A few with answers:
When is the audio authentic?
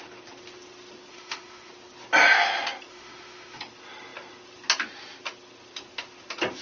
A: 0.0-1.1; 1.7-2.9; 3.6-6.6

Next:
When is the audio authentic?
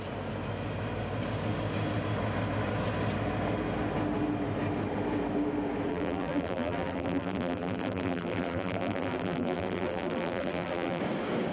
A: 0.0-5.9; 11.0-11.5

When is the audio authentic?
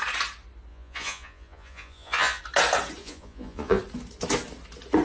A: 0.0-0.7; 2.4-3.0; 3.8-5.0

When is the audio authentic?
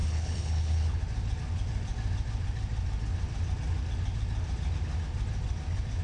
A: 1.0-6.0